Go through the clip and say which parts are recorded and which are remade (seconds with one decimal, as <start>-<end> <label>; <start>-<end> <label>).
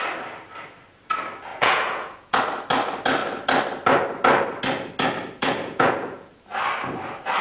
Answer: 0.0-1.5 recorded; 1.5-2.4 remade; 2.4-5.4 recorded; 5.4-6.3 remade; 6.3-7.4 recorded